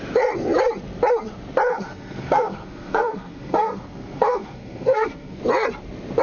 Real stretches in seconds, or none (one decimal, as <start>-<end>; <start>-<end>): 0.0-1.7; 5.4-6.2